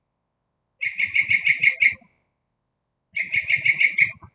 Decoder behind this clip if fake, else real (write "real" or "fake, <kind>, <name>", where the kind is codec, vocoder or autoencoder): real